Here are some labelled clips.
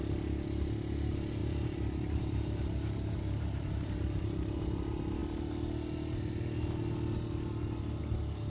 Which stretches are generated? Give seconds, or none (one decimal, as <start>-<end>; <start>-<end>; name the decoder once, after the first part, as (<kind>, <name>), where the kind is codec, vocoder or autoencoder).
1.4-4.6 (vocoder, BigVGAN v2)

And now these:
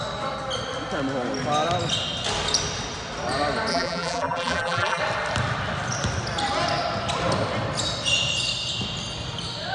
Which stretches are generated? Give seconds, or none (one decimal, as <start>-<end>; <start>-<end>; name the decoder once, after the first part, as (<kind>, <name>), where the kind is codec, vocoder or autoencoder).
3.7-5.0 (vocoder, BigVGAN v2)

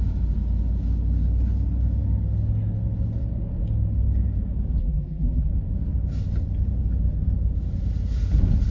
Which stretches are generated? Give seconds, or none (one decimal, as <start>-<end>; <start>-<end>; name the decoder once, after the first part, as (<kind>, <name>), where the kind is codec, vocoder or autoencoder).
4.8-5.5 (vocoder, BigVGAN v2)

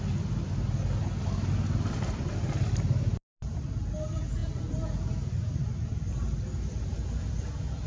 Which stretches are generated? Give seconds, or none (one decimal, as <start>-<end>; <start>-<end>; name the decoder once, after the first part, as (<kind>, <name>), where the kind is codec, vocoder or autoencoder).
none

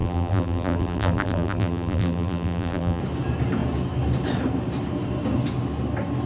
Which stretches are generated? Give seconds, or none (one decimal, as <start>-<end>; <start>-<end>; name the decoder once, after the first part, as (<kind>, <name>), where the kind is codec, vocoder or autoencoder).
0.0-3.0 (vocoder, BigVGAN v2)

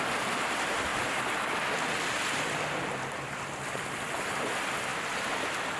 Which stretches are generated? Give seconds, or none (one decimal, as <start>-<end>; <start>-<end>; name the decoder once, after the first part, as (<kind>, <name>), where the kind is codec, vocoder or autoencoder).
none